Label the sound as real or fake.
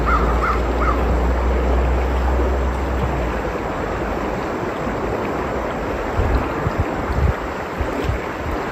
real